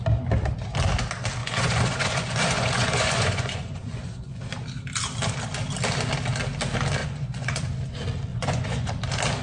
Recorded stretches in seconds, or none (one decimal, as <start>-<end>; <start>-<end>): 0.0-1.4; 4.4-7.0; 7.6-8.3; 8.9-9.4